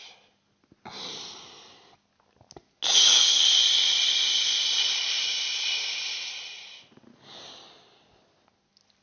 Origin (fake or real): real